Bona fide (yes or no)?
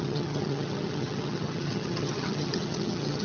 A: no